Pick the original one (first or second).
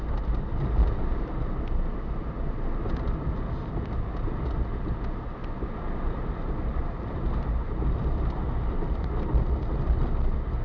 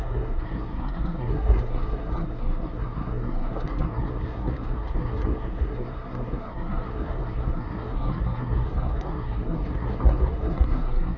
first